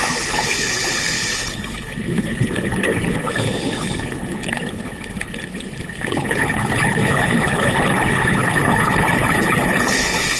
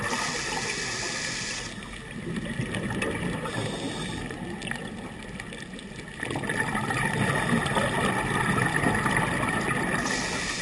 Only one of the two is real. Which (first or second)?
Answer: second